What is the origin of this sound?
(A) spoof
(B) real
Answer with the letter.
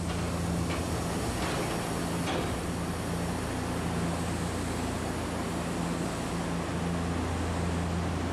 B